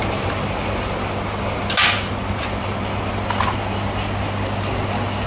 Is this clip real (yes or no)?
yes